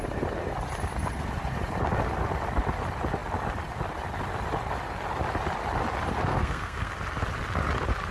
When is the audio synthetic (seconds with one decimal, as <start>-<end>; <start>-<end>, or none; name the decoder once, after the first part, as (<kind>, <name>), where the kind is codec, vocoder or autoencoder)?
6.3-6.9 (codec, SNAC)